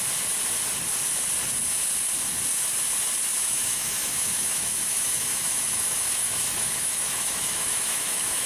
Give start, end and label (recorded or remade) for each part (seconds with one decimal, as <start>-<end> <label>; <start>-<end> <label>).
0.0-3.3 recorded; 3.3-8.5 remade